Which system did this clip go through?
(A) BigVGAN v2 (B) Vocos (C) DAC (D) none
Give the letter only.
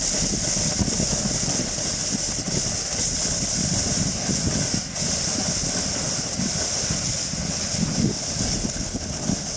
D